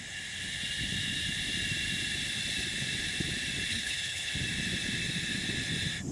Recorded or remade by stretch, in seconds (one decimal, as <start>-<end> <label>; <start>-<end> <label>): 0.0-3.7 recorded; 3.7-4.3 remade; 4.3-6.1 recorded